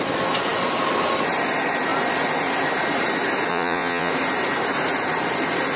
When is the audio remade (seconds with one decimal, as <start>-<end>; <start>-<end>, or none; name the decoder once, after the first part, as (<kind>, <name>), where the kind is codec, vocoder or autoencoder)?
3.5-4.1 (vocoder, Vocos)